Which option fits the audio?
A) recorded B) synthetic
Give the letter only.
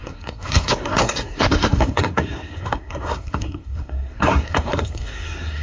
B